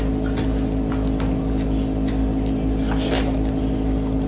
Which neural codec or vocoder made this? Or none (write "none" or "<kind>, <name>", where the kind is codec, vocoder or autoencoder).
none